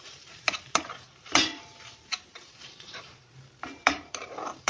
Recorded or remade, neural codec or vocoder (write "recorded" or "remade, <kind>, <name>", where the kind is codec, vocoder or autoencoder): remade, vocoder, BigVGAN v2